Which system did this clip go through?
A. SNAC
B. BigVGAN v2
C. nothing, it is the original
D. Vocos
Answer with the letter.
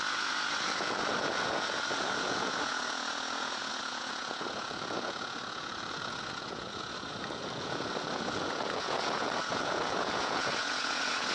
D